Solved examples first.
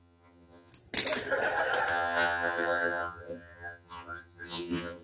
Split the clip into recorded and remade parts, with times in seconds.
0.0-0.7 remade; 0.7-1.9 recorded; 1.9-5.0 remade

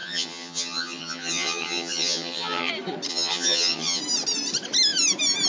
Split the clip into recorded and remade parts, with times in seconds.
0.0-2.7 remade; 2.7-3.1 recorded; 3.1-4.0 remade; 4.0-5.5 recorded